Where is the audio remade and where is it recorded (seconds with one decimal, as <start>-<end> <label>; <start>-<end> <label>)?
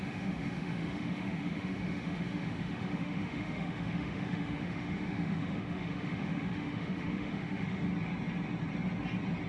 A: 0.0-7.9 remade; 7.9-9.5 recorded